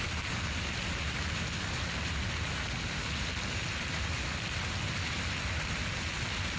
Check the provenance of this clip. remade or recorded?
recorded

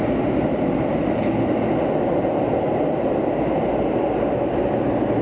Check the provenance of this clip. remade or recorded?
recorded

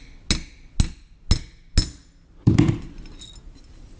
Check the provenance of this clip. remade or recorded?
recorded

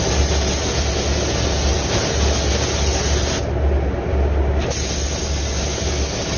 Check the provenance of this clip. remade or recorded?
recorded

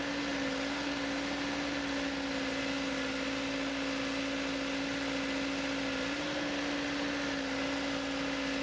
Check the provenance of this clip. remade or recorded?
recorded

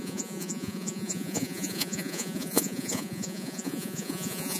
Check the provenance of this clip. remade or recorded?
remade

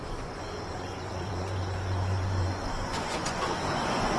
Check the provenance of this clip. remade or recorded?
remade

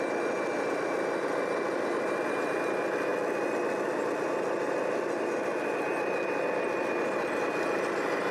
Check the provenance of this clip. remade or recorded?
recorded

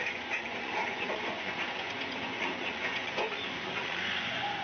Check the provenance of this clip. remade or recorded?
remade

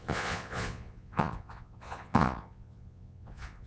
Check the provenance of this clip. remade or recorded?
remade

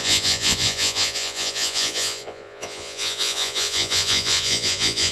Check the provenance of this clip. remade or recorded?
remade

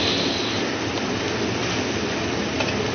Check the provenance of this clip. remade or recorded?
recorded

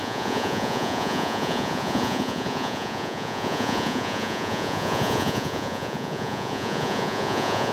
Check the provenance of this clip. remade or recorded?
remade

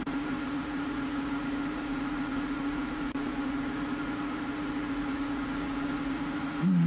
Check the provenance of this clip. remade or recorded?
remade